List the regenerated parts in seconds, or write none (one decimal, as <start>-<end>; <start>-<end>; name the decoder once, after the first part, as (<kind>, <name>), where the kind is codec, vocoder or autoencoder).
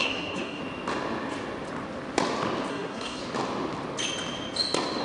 0.0-0.6 (codec, SNAC); 2.7-3.2